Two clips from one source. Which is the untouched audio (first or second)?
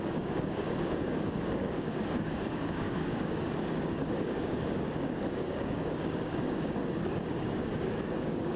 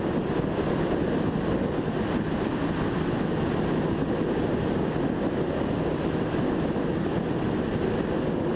second